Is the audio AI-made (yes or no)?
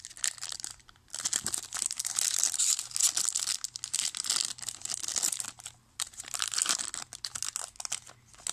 no